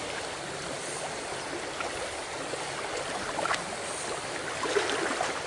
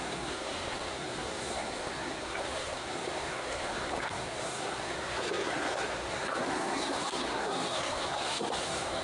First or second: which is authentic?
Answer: first